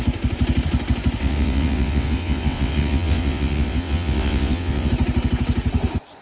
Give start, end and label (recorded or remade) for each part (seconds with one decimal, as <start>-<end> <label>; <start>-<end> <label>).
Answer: 0.0-1.2 recorded; 1.2-4.9 remade; 4.9-6.2 recorded